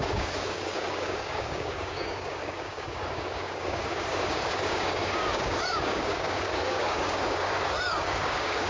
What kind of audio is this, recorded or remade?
remade